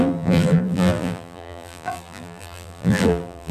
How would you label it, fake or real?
fake